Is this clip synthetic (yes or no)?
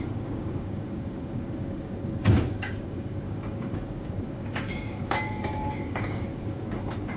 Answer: yes